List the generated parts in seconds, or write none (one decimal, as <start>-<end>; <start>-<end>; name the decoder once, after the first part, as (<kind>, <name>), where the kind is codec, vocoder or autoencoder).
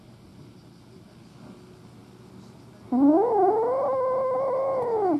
none